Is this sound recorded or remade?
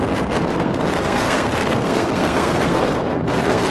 remade